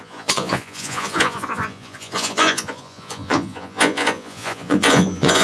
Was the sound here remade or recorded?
remade